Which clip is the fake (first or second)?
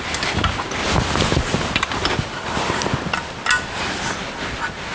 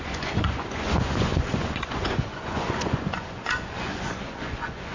second